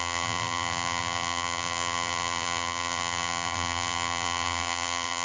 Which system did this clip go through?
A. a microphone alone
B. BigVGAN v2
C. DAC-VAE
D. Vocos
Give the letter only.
B